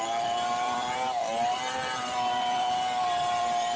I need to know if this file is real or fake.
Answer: fake